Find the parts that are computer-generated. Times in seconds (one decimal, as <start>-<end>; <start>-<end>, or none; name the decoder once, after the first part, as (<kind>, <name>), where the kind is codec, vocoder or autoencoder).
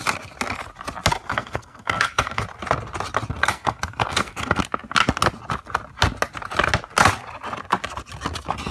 1.3-2.4 (codec, SNAC); 3.4-4.6